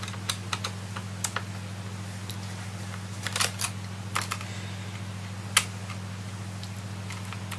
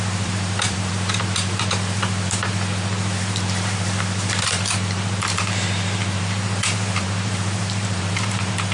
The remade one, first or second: second